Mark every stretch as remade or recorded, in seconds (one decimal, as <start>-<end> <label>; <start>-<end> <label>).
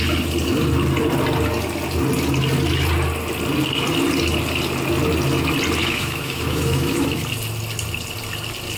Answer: 0.0-5.8 recorded; 5.8-7.2 remade; 7.2-8.8 recorded